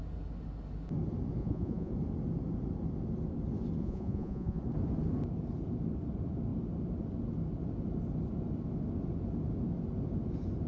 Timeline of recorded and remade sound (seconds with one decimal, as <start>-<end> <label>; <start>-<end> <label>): 0.0-1.4 recorded; 1.4-1.9 remade; 1.9-3.8 recorded; 3.8-4.6 remade; 4.6-10.7 recorded